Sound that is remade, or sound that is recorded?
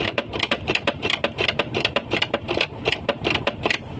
remade